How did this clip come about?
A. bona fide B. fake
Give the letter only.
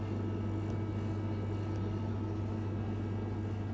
A